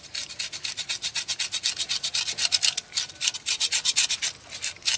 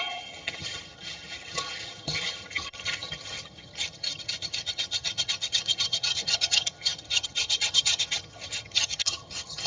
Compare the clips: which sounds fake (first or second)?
second